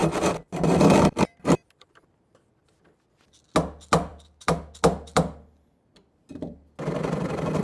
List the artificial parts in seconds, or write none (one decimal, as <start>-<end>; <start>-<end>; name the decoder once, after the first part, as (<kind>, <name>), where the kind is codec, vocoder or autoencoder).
none